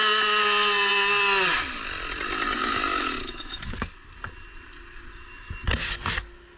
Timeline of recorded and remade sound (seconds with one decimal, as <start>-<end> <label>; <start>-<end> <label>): 0.0-2.6 recorded; 2.6-3.9 remade; 3.9-6.6 recorded